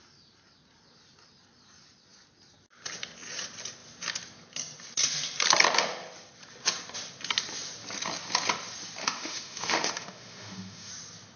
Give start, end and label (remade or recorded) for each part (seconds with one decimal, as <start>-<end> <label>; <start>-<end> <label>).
0.0-9.0 recorded; 9.0-10.9 remade; 10.9-11.4 recorded